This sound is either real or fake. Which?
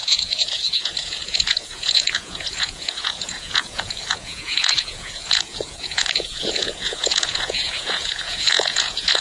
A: fake